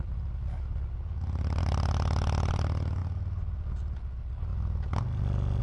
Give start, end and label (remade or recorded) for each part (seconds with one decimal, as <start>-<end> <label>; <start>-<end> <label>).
0.0-4.5 remade; 4.5-5.6 recorded